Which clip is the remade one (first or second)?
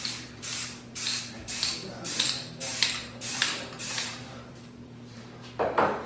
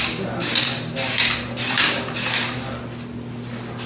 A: first